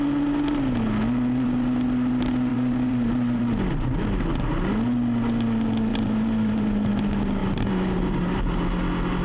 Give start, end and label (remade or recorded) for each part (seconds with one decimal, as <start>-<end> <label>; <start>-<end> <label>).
0.0-2.5 recorded; 2.5-3.6 remade; 3.6-5.9 recorded; 5.9-6.9 remade; 6.9-7.4 recorded; 7.4-8.6 remade; 8.6-9.2 recorded